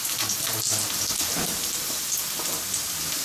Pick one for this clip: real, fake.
real